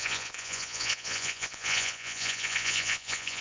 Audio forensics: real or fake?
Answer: fake